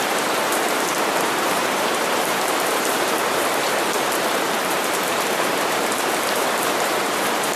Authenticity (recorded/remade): remade